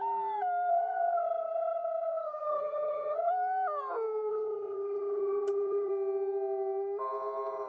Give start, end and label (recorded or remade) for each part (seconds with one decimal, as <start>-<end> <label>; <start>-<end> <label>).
0.0-0.7 recorded; 0.7-3.3 remade; 3.3-4.3 recorded; 4.3-5.9 remade; 5.9-7.7 recorded